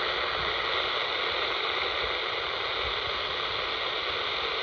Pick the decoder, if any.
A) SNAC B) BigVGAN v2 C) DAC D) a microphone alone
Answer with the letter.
D